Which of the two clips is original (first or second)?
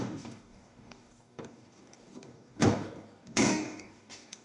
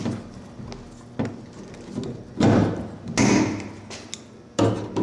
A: second